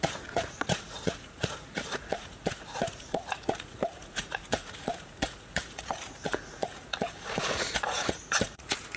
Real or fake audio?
fake